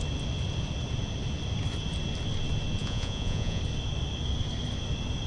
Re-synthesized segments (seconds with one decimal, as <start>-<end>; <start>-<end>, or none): 2.8-3.6